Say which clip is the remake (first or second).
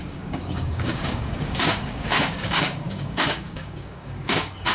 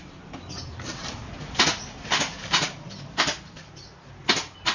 first